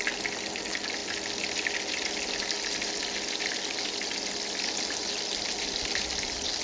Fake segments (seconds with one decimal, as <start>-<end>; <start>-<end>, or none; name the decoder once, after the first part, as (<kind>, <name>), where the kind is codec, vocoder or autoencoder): none